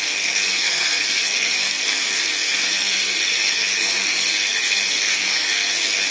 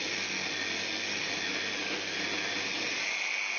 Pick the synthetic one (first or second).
first